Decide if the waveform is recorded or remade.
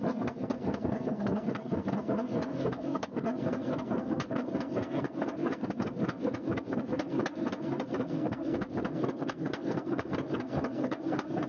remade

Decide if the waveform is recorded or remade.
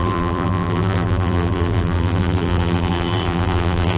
remade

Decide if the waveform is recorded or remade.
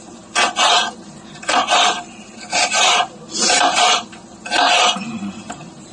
remade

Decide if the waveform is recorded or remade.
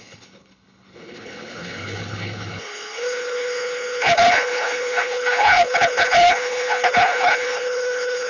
remade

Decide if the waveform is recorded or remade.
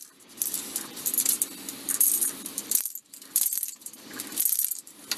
remade